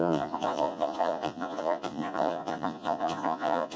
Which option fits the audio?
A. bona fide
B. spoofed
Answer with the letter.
B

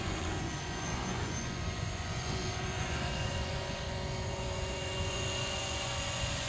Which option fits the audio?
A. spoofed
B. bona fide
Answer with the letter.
A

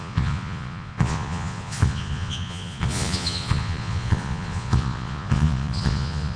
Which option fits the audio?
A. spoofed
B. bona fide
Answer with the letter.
A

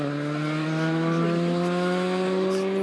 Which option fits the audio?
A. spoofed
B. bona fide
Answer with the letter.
B